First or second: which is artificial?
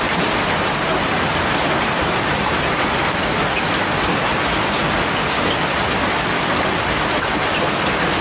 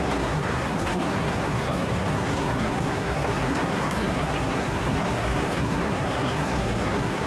second